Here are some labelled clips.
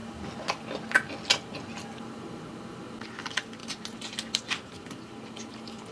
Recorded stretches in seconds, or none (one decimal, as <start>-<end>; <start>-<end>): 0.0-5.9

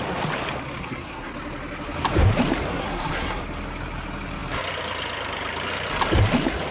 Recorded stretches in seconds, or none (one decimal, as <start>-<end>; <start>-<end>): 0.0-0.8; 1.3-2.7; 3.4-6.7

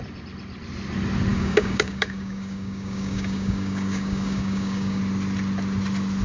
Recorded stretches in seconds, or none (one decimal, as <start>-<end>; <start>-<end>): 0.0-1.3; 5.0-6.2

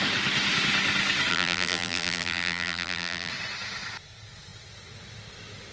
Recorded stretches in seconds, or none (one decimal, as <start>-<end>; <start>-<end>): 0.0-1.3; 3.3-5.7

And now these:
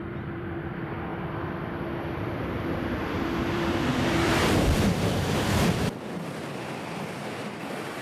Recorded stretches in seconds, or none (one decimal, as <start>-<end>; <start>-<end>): 1.1-2.2

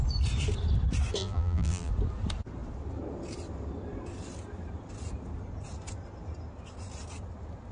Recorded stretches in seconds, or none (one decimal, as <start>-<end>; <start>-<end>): 0.0-1.2; 1.9-7.7